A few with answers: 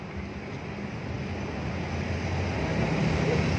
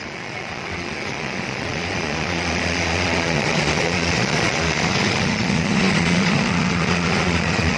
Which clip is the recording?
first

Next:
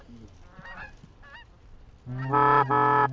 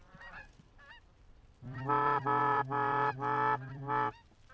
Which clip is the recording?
first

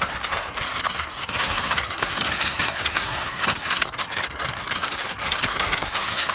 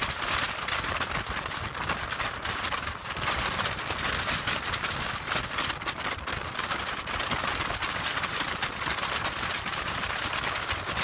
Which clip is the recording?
second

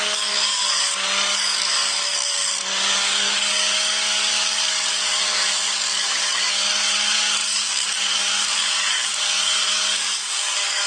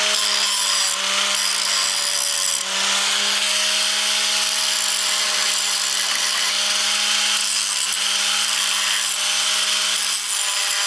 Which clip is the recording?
second